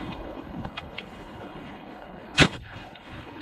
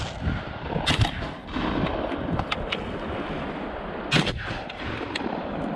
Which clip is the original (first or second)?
second